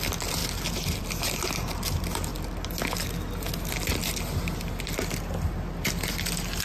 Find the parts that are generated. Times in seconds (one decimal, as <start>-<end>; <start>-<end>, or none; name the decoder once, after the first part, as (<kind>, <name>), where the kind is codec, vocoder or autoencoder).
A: none

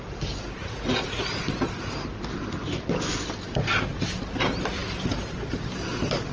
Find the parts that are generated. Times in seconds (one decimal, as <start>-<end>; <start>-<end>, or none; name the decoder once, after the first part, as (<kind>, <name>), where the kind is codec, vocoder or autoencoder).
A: 0.6-1.5 (vocoder, Vocos)

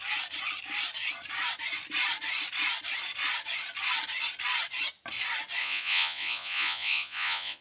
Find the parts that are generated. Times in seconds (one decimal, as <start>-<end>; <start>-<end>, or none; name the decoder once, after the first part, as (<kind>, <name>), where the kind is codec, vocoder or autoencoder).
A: 5.6-7.6 (vocoder, Vocos)

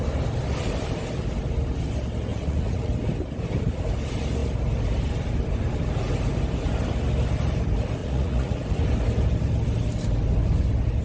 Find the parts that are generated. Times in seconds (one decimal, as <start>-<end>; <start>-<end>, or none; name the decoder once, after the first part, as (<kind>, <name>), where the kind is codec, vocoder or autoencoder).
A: 2.3-2.9 (vocoder, Vocos); 8.0-8.6

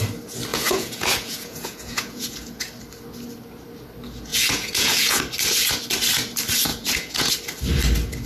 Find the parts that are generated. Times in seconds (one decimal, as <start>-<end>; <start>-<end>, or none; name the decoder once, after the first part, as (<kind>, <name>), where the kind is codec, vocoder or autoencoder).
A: 0.5-2.6 (vocoder, Vocos); 4.3-5.2; 6.7-7.3